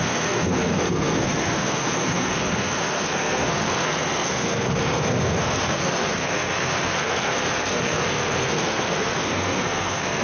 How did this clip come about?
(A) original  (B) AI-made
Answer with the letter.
B